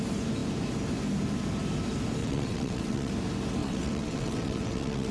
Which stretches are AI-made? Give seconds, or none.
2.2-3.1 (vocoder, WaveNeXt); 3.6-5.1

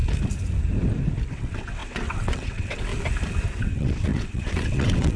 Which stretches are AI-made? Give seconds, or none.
1.3-2.9 (vocoder, WaveNeXt); 3.6-5.2

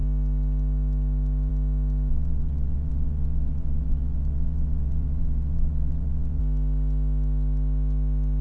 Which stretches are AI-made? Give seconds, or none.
2.1-6.4 (vocoder, WaveNeXt)

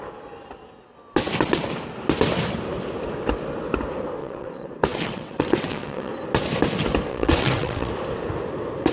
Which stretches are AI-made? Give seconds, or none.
4.2-6.1 (vocoder, WaveNeXt); 7.1-7.9